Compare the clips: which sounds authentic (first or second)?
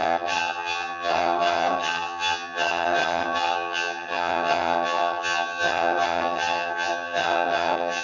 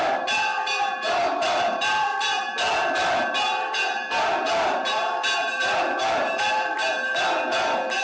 second